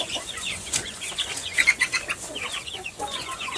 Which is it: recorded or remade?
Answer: remade